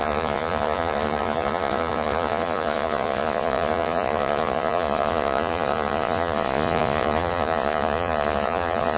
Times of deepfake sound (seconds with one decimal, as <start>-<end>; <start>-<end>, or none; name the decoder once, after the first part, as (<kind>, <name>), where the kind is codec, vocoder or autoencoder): 0.0-9.0 (vocoder, Vocos)